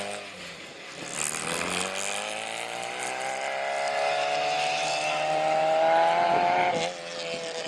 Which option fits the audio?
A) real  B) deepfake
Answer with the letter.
A